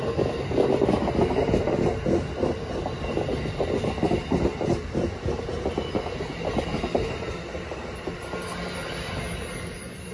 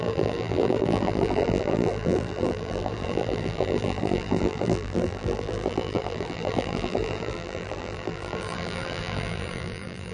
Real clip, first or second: first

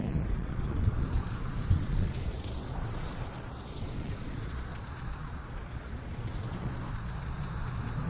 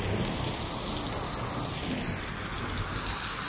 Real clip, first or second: second